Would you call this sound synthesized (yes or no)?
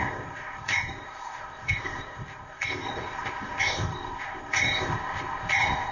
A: yes